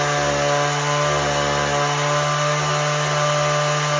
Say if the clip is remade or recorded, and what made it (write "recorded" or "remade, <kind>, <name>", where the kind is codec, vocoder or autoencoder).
recorded